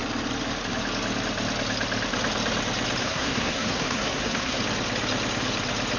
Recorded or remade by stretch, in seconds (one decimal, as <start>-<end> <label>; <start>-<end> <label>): 0.0-3.0 recorded; 3.0-4.6 remade; 4.6-6.0 recorded